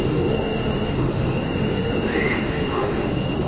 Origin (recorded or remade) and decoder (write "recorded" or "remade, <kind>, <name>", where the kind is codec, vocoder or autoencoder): remade, autoencoder, DAC-VAE